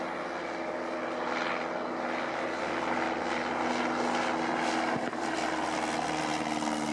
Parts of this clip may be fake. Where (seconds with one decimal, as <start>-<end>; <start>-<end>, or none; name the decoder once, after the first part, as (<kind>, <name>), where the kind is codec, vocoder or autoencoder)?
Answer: none